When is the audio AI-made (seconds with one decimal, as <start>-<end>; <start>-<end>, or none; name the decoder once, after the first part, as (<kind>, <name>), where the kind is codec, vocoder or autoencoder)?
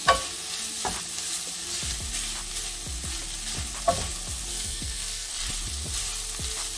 4.5-5.3 (codec, SNAC)